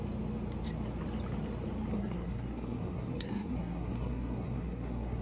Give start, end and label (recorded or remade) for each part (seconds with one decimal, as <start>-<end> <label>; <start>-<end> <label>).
0.0-1.9 recorded; 1.9-5.2 remade